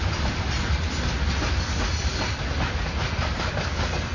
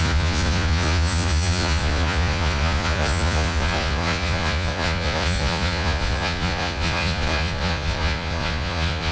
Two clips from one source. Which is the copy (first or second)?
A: second